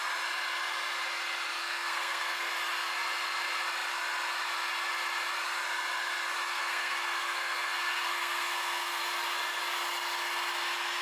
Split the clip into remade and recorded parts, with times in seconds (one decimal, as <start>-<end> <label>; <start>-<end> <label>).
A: 0.0-1.6 recorded; 1.6-2.5 remade; 2.5-6.5 recorded; 6.5-9.0 remade; 9.0-11.0 recorded

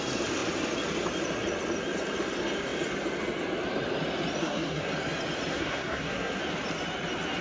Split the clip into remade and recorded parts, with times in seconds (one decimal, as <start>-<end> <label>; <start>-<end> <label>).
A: 0.0-4.4 recorded; 4.4-4.9 remade; 4.9-5.5 recorded; 5.5-6.4 remade; 6.4-7.4 recorded

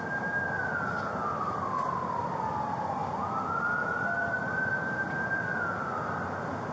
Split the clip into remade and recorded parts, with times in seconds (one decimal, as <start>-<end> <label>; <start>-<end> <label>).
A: 0.0-6.7 recorded